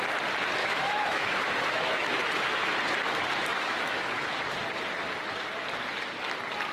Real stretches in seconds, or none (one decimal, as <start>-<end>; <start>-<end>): 0.0-0.6; 2.8-3.5; 4.4-6.7